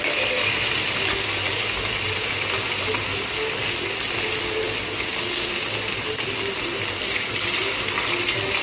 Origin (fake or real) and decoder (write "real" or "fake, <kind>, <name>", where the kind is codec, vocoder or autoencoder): real